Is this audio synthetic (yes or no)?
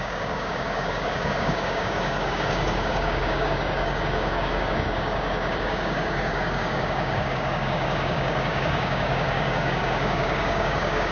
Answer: yes